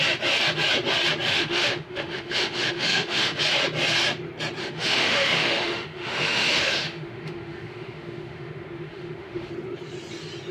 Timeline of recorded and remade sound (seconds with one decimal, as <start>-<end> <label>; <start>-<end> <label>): 0.0-1.3 recorded; 1.3-3.4 remade; 3.4-4.6 recorded; 4.6-9.5 remade; 9.5-10.5 recorded